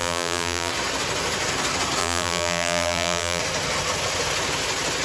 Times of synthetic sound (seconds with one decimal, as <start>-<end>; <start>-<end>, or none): 0.0-0.7; 2.0-3.4